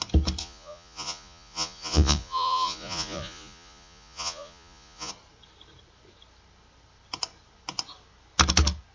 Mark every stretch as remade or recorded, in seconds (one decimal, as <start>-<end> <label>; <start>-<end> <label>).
0.0-0.4 recorded; 0.4-5.1 remade; 5.1-8.9 recorded